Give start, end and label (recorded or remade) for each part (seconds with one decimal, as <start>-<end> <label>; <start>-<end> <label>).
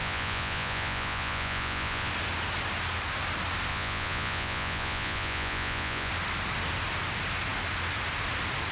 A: 0.0-2.1 remade; 2.1-3.7 recorded; 3.7-6.1 remade; 6.1-8.7 recorded